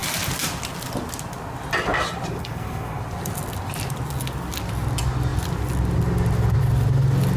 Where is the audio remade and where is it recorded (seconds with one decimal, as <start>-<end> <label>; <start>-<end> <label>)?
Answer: 0.0-2.4 recorded; 2.4-3.0 remade; 3.0-7.4 recorded